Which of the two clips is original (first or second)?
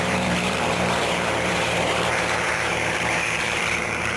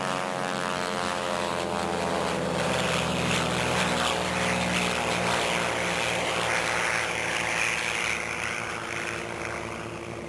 second